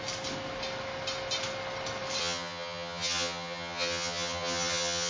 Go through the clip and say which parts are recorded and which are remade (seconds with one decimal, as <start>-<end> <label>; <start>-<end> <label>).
0.0-2.2 recorded; 2.2-5.1 remade